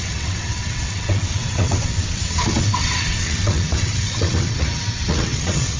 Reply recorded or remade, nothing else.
remade